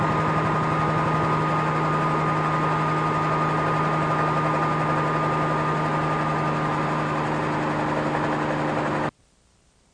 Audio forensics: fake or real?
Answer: real